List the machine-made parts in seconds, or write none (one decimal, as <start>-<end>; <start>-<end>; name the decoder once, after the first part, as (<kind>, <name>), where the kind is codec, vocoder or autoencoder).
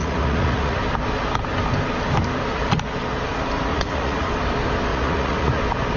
0.0-0.8 (vocoder, Vocos); 3.7-4.3; 4.9-5.6